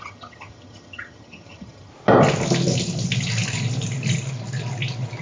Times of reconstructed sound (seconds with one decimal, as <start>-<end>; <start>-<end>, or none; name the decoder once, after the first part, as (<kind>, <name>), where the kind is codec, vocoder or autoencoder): 0.0-1.9 (vocoder, HiFi-GAN)